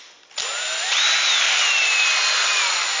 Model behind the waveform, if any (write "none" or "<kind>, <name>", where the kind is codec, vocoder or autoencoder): none